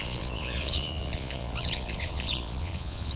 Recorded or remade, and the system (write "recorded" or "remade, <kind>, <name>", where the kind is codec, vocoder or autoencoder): remade, vocoder, Vocos